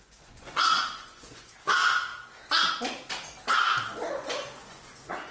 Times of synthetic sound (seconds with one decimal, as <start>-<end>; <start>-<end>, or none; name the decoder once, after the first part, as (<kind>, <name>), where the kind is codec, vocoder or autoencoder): 0.0-2.1 (vocoder, Vocos); 4.1-5.3